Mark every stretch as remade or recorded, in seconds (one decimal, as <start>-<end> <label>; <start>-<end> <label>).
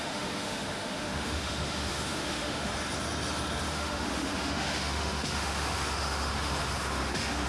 0.0-2.7 remade; 2.7-3.7 recorded; 3.7-7.5 remade